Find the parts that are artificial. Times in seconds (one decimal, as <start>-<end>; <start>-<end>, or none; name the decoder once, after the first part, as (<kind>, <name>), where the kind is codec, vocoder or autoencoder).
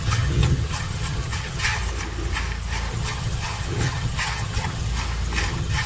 0.0-1.8 (vocoder, HiFi-GAN); 2.9-4.9; 5.5-5.9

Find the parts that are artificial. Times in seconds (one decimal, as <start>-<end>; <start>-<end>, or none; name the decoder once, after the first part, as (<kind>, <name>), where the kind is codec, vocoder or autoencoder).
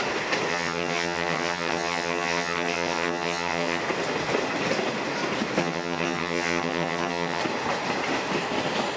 0.5-3.8 (vocoder, HiFi-GAN); 5.6-7.4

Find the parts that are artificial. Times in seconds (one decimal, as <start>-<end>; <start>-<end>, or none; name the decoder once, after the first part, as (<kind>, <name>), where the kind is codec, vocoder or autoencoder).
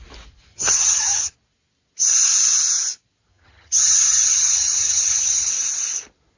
0.5-1.3 (vocoder, HiFi-GAN); 3.3-5.5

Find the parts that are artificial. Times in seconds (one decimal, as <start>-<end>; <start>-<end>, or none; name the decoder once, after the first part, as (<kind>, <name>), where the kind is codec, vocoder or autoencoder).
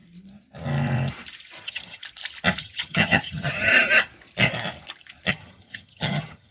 1.6-2.0 (vocoder, HiFi-GAN); 2.6-3.7; 5.3-6.5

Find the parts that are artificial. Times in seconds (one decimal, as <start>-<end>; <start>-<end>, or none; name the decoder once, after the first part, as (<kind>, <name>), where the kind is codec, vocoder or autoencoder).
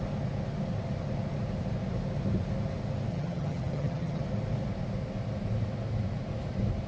3.1-4.2 (vocoder, HiFi-GAN)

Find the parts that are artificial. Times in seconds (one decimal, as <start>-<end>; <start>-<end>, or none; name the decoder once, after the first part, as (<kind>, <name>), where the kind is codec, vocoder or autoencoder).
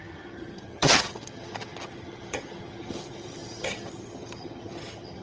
0.0-5.2 (vocoder, HiFi-GAN)